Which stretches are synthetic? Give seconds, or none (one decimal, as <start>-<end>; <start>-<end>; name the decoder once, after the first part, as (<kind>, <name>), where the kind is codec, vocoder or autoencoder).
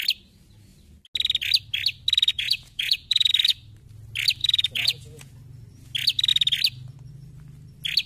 2.3-3.3 (vocoder, Vocos); 4.4-5.3